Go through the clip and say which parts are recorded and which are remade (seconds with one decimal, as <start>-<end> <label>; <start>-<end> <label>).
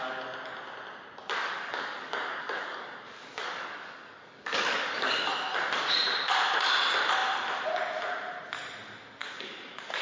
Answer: 0.0-1.4 recorded; 1.4-5.3 remade; 5.3-9.2 recorded; 9.2-10.0 remade